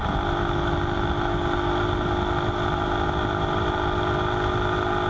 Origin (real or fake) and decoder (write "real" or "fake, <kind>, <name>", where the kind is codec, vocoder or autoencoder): real